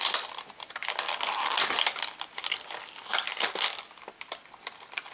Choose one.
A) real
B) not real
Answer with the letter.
A